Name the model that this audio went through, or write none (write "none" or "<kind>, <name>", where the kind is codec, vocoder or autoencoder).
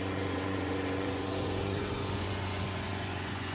vocoder, Vocos